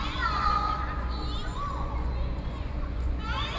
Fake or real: fake